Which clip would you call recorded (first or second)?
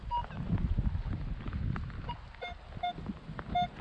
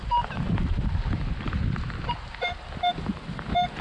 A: first